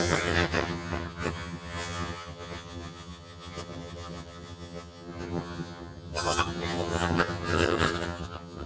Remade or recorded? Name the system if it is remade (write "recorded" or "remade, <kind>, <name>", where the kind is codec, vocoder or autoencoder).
remade, vocoder, HiFi-GAN